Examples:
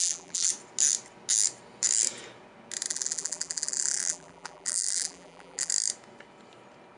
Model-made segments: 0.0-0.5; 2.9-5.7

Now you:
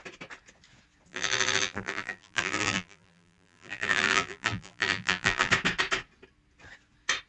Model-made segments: 1.1-5.5

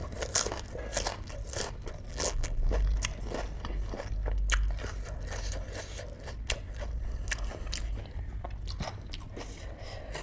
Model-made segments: 2.1-2.7

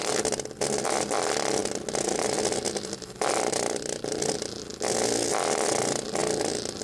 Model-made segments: none